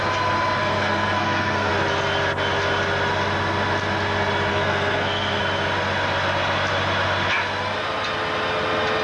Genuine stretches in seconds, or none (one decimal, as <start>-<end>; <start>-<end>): 0.0-0.6; 1.7-4.5; 5.4-9.0